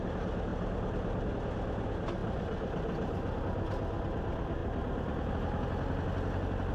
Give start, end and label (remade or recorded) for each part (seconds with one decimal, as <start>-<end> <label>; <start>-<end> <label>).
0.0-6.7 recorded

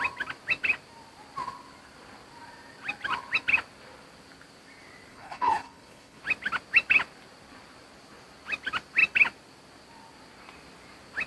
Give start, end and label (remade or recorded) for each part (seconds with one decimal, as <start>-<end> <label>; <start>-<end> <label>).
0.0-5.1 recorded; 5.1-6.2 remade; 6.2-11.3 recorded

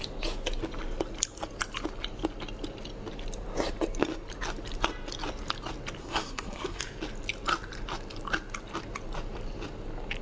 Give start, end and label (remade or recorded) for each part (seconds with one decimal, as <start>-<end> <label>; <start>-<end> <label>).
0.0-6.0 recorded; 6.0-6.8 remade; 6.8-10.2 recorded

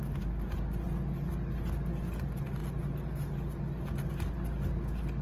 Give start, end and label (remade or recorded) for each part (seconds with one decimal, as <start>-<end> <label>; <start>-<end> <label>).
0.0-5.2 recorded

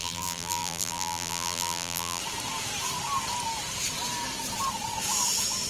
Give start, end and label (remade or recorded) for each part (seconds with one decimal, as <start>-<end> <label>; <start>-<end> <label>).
0.0-2.2 remade; 2.2-5.7 recorded

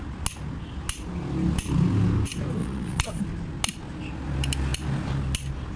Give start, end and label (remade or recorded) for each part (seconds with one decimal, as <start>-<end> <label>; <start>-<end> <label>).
0.0-2.6 recorded; 2.6-3.2 remade; 3.2-5.8 recorded

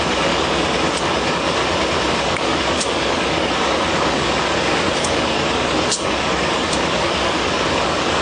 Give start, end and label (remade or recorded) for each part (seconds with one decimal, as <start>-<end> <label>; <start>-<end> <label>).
0.0-1.6 remade; 1.6-2.1 recorded; 2.1-8.2 remade

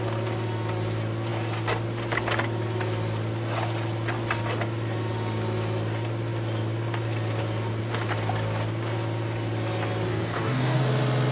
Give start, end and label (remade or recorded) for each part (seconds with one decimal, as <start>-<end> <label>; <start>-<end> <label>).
0.0-10.1 recorded; 10.1-10.8 remade; 10.8-11.3 recorded